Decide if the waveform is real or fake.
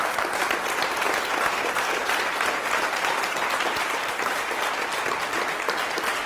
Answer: fake